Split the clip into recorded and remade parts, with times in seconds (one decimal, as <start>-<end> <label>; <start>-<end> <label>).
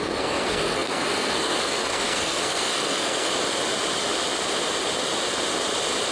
0.0-3.3 remade; 3.3-6.1 recorded